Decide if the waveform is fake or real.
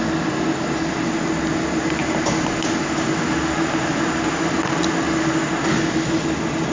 real